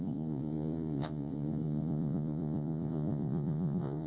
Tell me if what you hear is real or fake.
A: fake